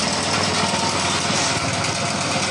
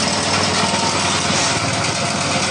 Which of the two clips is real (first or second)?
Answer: second